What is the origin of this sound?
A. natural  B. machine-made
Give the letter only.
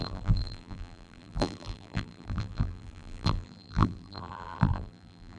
B